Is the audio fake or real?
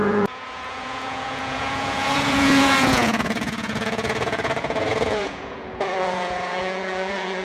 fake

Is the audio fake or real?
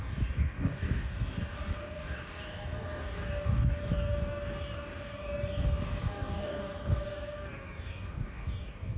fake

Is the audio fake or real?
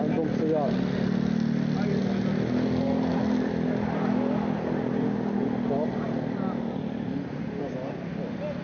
real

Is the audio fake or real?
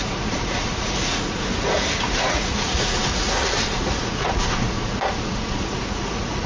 fake